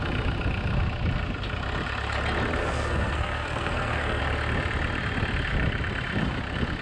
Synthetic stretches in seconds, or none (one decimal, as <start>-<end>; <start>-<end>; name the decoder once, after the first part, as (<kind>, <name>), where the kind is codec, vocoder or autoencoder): 2.6-4.2 (codec, SNAC)